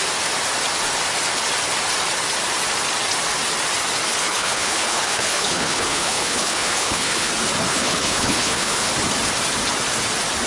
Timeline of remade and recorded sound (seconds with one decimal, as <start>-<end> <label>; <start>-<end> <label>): 0.0-4.2 recorded; 4.2-7.3 remade; 7.3-7.7 recorded; 7.7-8.9 remade; 8.9-10.5 recorded